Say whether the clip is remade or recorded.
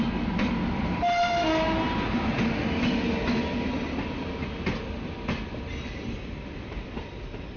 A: recorded